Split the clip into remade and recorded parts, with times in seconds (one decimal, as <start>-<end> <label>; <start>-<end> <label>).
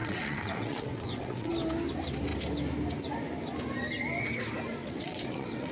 0.0-1.5 remade; 1.5-4.8 recorded; 4.8-5.7 remade